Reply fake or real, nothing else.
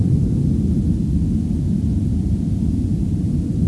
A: real